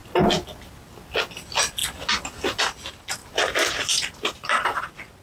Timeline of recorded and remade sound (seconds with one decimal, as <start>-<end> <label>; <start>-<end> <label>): 0.0-3.2 recorded; 3.2-4.8 remade; 4.8-5.2 recorded